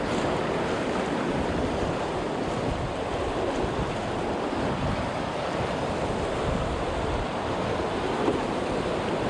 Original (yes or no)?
yes